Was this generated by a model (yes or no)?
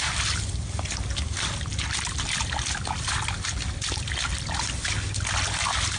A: no